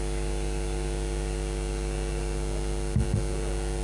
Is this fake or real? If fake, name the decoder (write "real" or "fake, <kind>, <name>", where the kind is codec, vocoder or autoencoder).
real